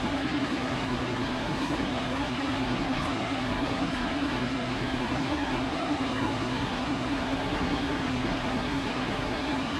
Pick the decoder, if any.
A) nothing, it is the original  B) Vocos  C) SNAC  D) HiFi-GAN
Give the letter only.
C